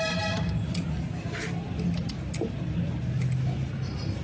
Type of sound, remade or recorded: recorded